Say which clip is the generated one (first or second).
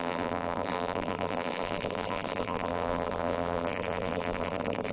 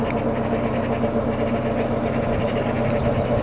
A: first